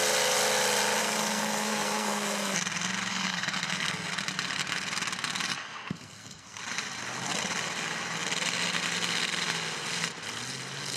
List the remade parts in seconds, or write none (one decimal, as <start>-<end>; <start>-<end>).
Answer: 1.0-2.6; 3.1-4.1; 5.6-6.6